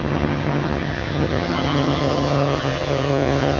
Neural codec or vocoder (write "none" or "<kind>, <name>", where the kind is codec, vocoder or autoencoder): vocoder, HiFi-GAN